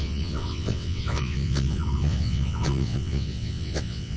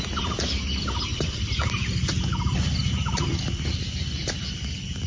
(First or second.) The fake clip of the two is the first